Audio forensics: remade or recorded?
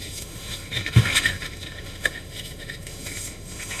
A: remade